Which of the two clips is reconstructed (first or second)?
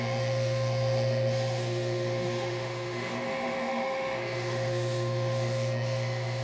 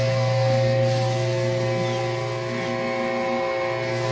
first